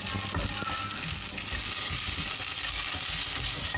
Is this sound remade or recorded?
recorded